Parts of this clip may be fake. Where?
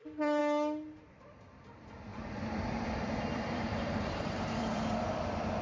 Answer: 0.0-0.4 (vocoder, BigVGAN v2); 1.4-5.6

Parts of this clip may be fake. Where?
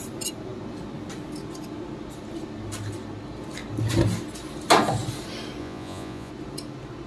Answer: 5.6-6.3 (vocoder, Vocos)